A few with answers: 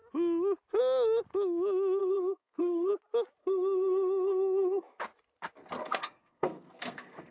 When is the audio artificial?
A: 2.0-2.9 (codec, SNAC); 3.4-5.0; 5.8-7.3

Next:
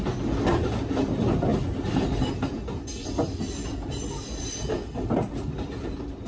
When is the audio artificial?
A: none

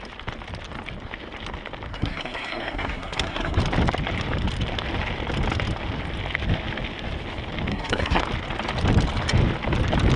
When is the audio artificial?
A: 1.9-3.6 (codec, SNAC); 7.7-8.2

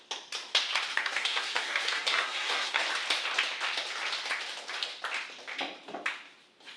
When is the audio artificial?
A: 0.9-2.8 (codec, SNAC)

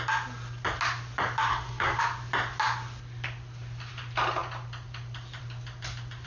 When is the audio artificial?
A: 1.5-2.0 (codec, SNAC)

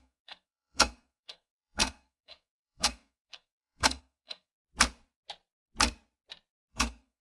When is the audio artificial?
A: 0.0-4.5 (codec, SNAC); 6.7-7.2

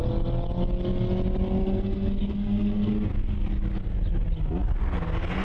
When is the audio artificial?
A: 1.6-2.9 (codec, SNAC)

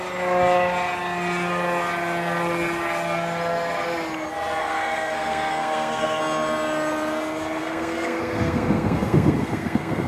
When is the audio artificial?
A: 4.6-6.2 (codec, SNAC); 7.6-10.1